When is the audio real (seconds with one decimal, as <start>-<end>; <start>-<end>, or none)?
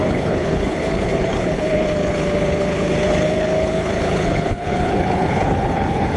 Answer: none